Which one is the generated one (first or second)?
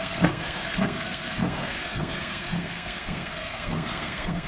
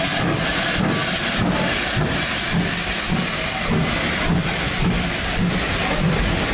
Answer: first